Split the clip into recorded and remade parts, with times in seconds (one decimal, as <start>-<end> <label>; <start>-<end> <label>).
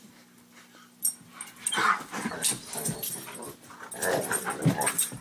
0.0-5.2 recorded